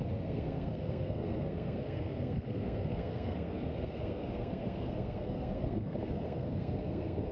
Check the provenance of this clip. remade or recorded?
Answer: remade